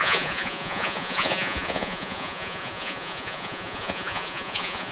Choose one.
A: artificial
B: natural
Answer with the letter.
A